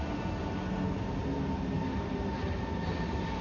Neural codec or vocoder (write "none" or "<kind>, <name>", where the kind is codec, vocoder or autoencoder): none